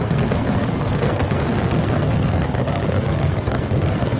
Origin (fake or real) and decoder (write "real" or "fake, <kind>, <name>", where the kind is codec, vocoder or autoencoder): fake, codec, SNAC